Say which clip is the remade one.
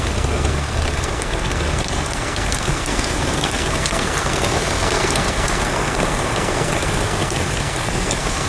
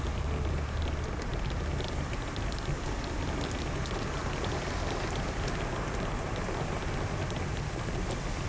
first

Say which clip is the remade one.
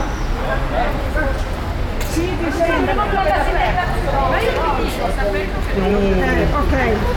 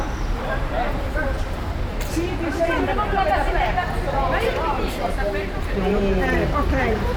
second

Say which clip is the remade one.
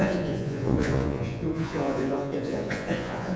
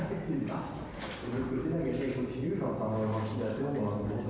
first